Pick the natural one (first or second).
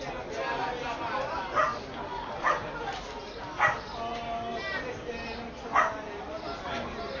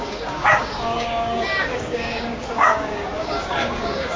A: first